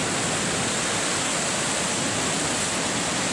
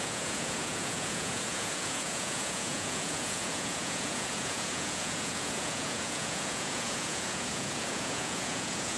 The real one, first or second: first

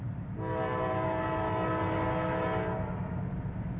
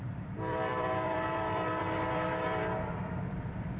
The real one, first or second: first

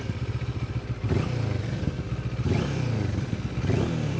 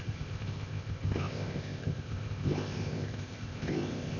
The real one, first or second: first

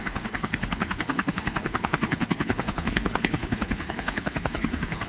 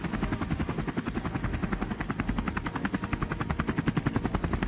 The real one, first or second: second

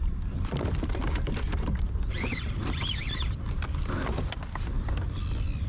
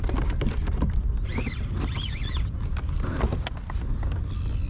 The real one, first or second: second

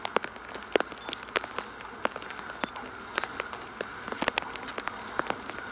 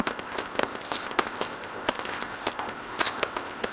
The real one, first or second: first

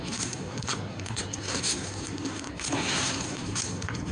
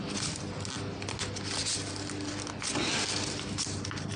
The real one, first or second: second